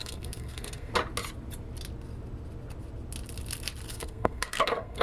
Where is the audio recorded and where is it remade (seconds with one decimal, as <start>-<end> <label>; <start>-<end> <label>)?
0.0-0.9 remade; 0.9-3.9 recorded; 3.9-5.0 remade